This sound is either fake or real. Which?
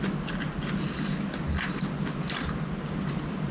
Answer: real